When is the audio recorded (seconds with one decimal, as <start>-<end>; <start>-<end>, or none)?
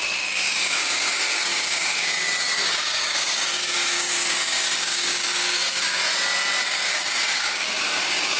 6.0-6.6